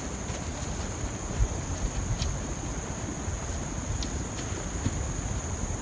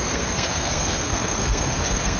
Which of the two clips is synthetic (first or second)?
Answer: second